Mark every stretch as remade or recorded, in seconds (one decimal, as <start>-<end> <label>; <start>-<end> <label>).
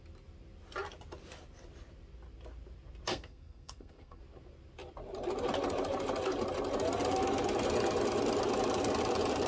0.0-3.1 recorded; 3.1-4.2 remade; 4.2-9.5 recorded